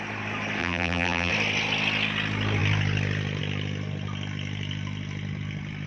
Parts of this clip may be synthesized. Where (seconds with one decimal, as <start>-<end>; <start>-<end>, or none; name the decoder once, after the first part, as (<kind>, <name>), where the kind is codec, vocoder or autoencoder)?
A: 0.6-1.3 (vocoder, BigVGAN v2)